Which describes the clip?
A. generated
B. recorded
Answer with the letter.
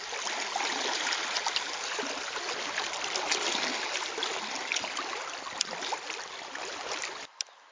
B